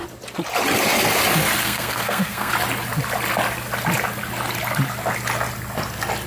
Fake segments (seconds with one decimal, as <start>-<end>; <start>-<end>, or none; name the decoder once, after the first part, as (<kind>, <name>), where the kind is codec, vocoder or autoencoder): 1.6-2.5 (codec, SNAC)